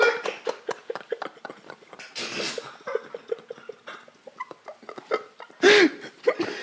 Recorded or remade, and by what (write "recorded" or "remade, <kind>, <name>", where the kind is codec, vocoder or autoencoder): recorded